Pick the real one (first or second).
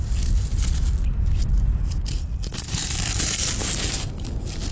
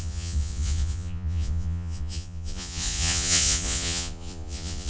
first